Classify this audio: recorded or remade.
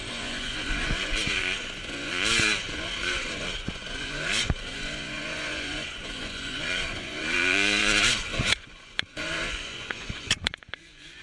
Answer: remade